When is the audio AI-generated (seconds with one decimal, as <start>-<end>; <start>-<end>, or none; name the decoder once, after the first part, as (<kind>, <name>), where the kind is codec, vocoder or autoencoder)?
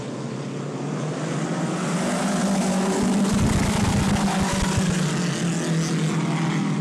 none